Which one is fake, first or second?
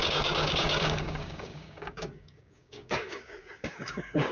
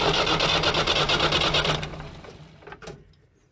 first